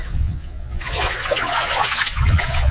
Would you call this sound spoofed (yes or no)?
yes